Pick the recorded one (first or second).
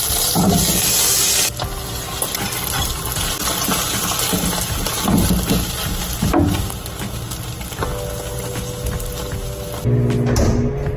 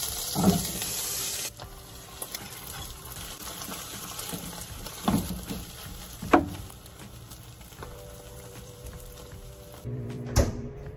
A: first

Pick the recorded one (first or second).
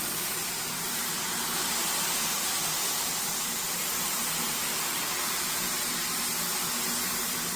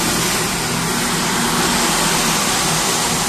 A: second